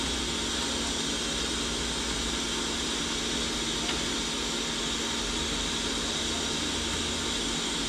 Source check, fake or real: real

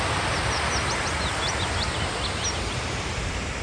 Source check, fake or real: real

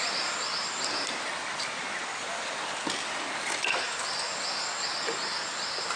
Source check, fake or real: real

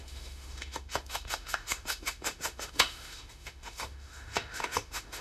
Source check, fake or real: fake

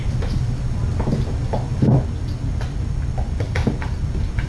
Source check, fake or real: real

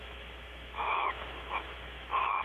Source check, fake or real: fake